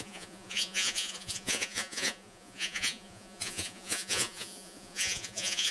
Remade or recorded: remade